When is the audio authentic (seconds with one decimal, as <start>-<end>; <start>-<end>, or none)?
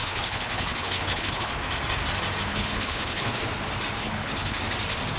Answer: 1.5-2.5; 3.4-4.0; 4.6-5.2